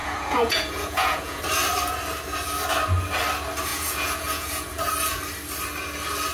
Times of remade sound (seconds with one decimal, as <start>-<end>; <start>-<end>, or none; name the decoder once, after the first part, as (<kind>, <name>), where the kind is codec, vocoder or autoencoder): 0.0-1.4 (vocoder, Vocos); 3.7-4.9